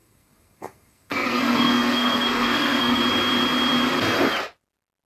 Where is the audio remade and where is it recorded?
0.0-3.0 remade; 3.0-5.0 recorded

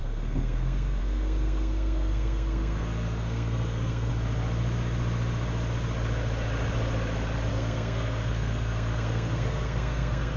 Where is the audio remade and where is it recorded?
0.0-4.1 remade; 4.1-7.5 recorded; 7.5-10.4 remade

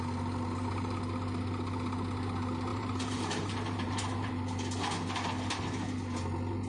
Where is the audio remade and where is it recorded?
0.0-2.7 recorded; 2.7-4.3 remade; 4.3-6.7 recorded